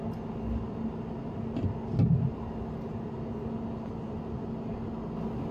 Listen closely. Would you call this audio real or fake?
real